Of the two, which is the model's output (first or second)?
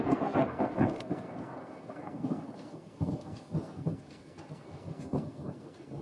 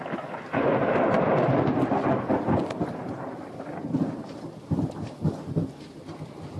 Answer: first